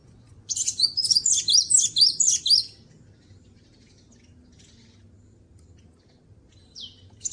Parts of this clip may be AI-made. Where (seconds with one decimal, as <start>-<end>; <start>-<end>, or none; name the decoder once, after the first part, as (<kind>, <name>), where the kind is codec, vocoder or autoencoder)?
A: 0.0-1.3 (vocoder, Vocos)